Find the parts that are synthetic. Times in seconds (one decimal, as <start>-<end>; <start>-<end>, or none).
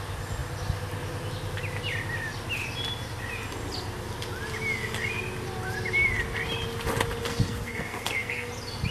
7.2-8.5